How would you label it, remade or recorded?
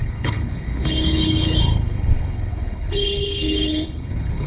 remade